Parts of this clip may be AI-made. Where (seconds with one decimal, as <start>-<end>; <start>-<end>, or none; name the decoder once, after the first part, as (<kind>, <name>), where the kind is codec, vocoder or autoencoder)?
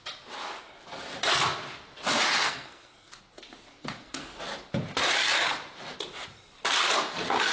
2.4-3.1 (codec, SNAC); 3.7-4.4